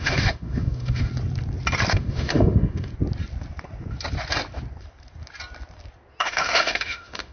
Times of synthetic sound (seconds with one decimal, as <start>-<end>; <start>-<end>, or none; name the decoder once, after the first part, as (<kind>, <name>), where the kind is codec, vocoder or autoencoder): 0.0-1.1 (autoencoder, DAC-VAE); 1.9-2.9; 6.2-7.3